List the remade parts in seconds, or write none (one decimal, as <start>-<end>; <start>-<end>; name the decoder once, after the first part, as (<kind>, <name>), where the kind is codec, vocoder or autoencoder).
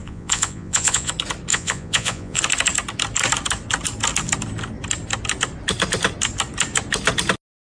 0.0-1.1 (vocoder, Vocos); 1.5-2.4